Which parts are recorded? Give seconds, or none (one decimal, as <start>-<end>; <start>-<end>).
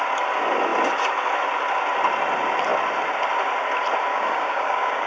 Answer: 0.0-4.1